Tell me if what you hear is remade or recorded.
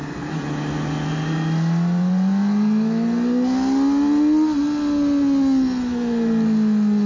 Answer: recorded